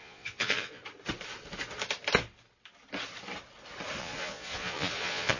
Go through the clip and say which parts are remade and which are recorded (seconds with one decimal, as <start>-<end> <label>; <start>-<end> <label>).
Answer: 0.0-0.8 remade; 0.8-4.0 recorded; 4.0-5.4 remade